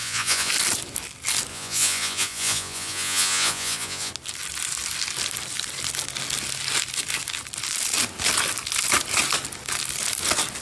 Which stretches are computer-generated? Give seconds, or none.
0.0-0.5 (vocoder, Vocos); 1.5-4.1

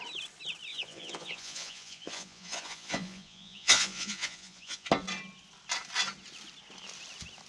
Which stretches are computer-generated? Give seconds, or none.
0.7-4.9 (vocoder, Vocos)

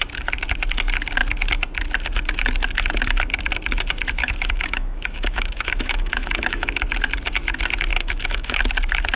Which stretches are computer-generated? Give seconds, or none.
4.2-6.8 (autoencoder, DAC-VAE); 7.9-8.6

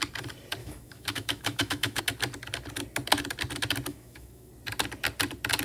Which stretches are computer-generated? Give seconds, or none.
0.6-2.0 (autoencoder, DAC-VAE); 3.9-4.5

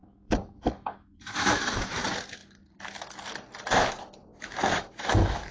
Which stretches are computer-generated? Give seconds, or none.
0.0-2.0 (autoencoder, DAC-VAE); 4.3-5.5

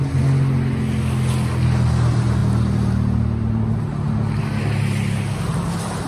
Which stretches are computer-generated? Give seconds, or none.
none

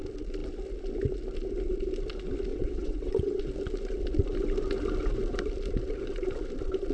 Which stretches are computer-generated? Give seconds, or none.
2.5-3.4 (vocoder, WaveNeXt)

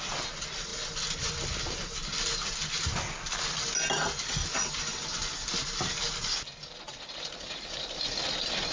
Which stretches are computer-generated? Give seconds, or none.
none